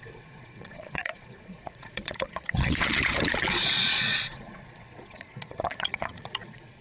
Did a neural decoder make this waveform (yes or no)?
yes